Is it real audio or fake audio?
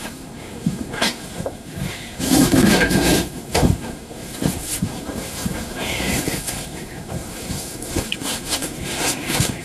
fake